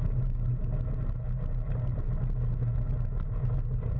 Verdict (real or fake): real